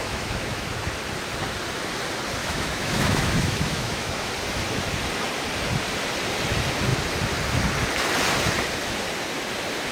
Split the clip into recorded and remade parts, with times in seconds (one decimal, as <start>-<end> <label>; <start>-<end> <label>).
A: 0.0-0.7 remade; 0.7-2.4 recorded; 2.4-4.3 remade; 4.3-9.9 recorded